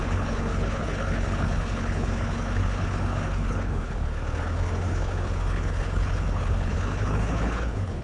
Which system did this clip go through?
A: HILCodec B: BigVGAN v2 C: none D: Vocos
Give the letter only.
A